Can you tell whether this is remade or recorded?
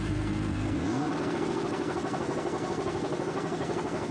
remade